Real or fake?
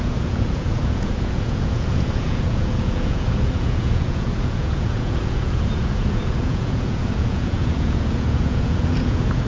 fake